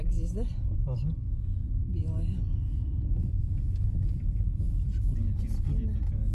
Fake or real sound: real